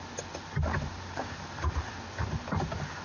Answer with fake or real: real